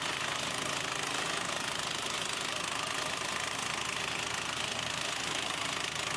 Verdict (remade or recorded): recorded